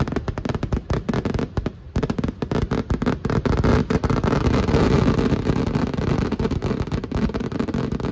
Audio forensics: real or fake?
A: real